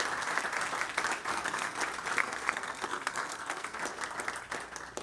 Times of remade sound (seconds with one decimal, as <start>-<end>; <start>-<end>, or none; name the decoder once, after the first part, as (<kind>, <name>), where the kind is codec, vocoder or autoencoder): 1.3-1.8 (codec, SNAC); 2.2-3.8